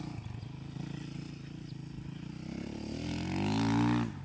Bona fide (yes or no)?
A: yes